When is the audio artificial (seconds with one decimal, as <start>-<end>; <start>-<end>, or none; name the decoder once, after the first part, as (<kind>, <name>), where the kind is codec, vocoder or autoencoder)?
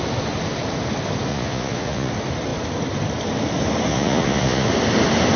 1.3-2.1 (vocoder, Vocos); 3.9-4.7